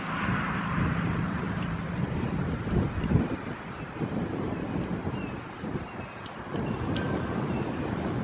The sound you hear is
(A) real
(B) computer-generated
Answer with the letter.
B